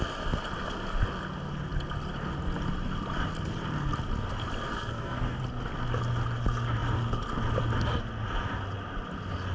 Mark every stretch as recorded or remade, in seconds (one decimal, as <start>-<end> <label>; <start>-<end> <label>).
0.0-4.7 recorded; 4.7-5.4 remade; 5.4-9.5 recorded